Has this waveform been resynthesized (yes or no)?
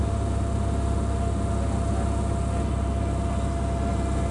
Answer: no